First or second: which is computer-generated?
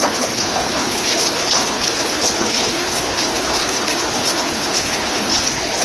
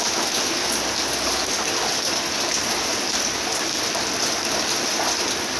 first